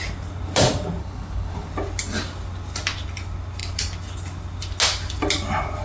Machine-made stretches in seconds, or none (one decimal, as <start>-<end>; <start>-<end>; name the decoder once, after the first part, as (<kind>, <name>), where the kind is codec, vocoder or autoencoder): 1.0-1.7 (codec, HILCodec)